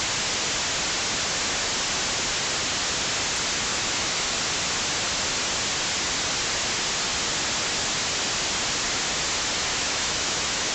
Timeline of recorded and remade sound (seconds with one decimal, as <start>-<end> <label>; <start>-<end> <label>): 0.0-3.7 recorded; 3.7-4.4 remade; 4.4-9.7 recorded; 9.7-10.7 remade